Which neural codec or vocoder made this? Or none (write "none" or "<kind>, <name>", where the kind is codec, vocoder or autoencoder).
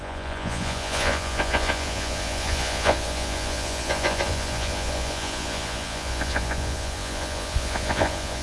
vocoder, Vocos